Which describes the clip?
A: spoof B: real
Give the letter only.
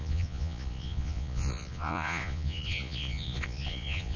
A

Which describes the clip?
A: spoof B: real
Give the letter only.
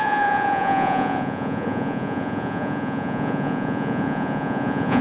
A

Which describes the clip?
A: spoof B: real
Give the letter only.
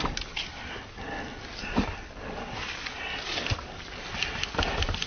B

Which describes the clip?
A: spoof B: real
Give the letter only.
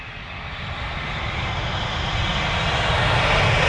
B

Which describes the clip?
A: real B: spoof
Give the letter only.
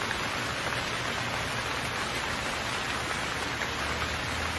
A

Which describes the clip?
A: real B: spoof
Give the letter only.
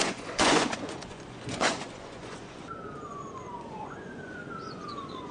B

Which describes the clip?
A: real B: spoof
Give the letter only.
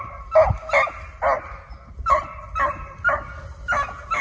A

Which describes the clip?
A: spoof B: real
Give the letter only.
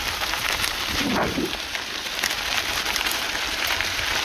A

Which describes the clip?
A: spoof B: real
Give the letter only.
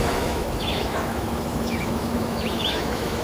A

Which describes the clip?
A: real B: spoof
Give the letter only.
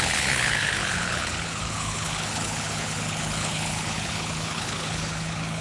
B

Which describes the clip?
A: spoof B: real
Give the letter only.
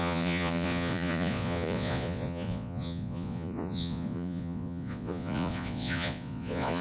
A